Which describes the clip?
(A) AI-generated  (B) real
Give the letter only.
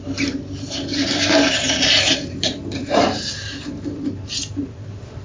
A